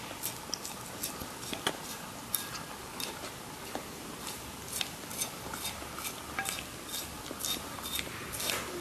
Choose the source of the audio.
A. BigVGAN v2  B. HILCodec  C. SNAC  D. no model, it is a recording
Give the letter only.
D